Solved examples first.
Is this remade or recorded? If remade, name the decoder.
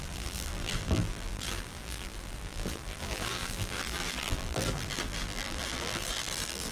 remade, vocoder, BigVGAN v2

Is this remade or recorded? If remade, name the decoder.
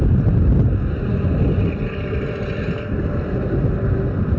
recorded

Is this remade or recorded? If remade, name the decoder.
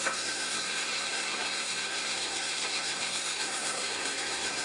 remade, codec, SNAC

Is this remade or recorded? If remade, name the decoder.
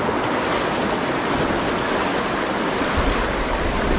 recorded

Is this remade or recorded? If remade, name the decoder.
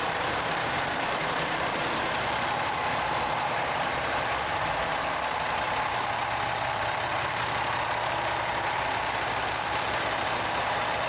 remade, vocoder, BigVGAN v2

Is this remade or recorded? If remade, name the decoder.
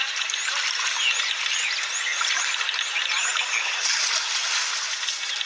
recorded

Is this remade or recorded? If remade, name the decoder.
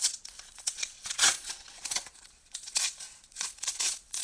remade, vocoder, Vocos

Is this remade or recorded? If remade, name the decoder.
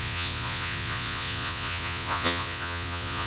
remade, vocoder, Vocos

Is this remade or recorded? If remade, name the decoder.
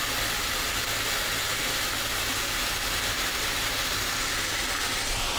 recorded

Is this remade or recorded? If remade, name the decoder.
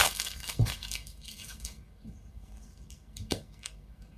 remade, codec, SNAC